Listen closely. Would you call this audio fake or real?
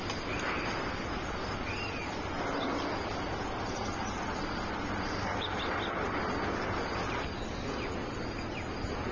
real